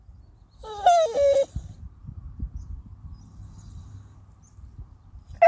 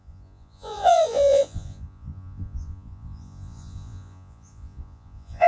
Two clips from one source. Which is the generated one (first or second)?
second